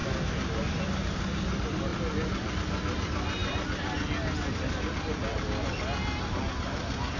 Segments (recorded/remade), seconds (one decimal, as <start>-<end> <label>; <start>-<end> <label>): 0.0-7.2 recorded